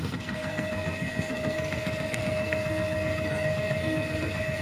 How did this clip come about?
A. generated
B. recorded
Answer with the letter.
A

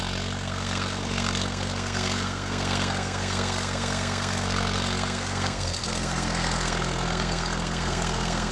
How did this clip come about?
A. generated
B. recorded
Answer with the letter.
A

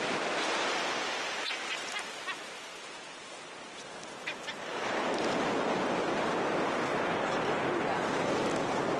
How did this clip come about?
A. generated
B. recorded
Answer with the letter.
B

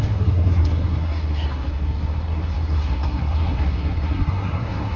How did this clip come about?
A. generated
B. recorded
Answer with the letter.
A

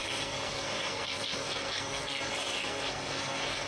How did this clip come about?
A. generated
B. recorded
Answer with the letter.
A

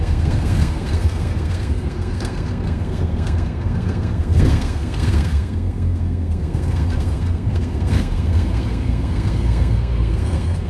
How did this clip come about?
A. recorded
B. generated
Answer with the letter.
B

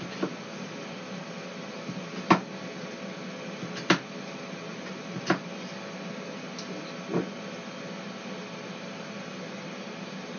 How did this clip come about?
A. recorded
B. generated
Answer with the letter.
A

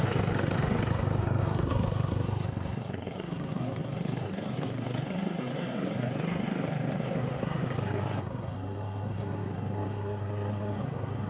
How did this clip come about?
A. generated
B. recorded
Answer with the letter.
A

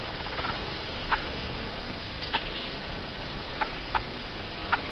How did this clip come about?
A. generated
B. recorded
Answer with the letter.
A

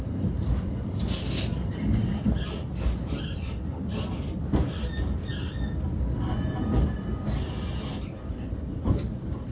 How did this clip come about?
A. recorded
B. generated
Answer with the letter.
A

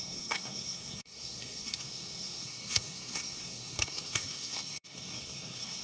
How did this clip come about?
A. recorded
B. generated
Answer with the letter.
B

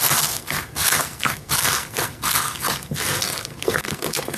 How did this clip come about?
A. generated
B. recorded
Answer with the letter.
A